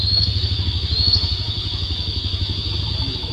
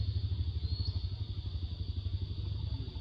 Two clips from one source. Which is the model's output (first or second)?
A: first